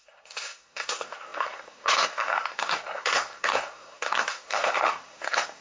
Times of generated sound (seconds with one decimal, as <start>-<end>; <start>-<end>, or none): 0.0-5.6